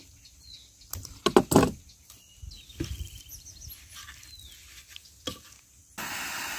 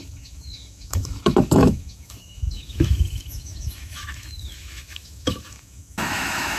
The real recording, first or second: first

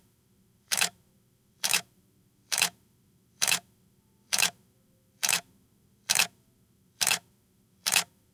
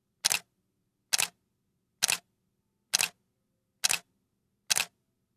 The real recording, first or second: second